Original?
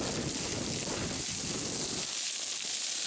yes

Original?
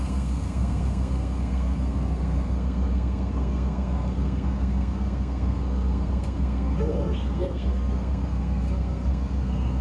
no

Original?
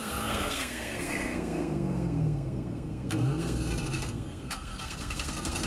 no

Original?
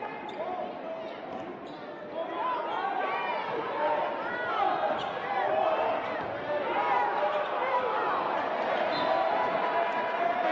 yes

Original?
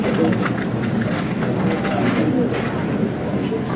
yes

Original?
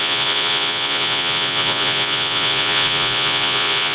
no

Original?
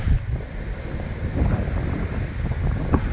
yes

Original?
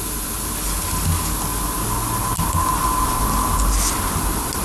yes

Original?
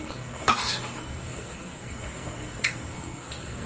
no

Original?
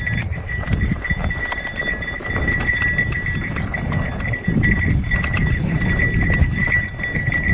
yes